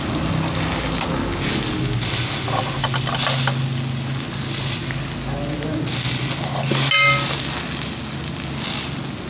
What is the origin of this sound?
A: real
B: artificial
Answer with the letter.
A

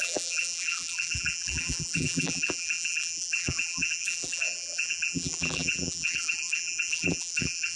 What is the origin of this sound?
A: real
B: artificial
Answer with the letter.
B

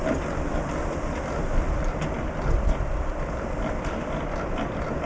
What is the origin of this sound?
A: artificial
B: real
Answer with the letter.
A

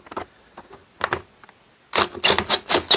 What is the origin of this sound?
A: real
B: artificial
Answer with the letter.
A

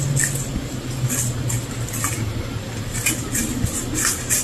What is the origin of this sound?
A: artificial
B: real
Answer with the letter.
B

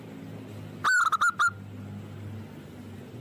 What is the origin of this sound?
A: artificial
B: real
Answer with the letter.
B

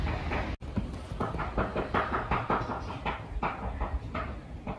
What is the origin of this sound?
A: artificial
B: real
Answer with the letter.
B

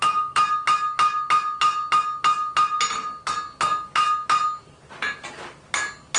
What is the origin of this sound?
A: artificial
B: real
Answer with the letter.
B